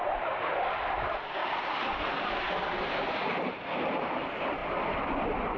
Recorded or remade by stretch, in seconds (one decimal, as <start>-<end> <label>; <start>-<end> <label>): 0.0-5.6 recorded